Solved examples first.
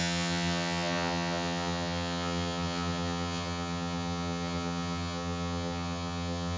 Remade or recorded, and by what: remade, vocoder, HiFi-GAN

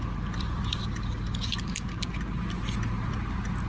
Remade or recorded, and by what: recorded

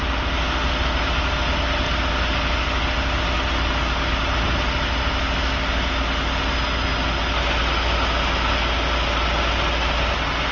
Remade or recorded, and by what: recorded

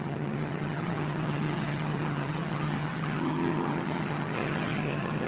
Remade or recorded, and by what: remade, vocoder, HiFi-GAN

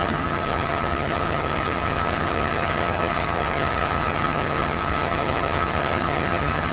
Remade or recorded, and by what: remade, vocoder, HiFi-GAN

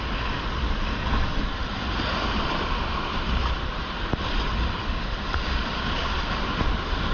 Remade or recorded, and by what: recorded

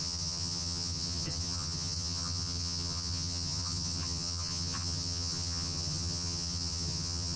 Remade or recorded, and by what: remade, vocoder, HiFi-GAN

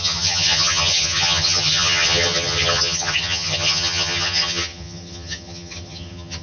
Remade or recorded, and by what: remade, vocoder, HiFi-GAN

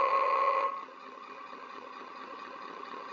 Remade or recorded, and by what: remade, vocoder, HiFi-GAN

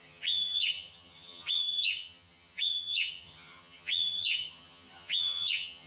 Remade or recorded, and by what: remade, vocoder, HiFi-GAN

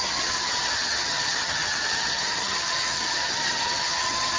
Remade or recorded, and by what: remade, vocoder, HiFi-GAN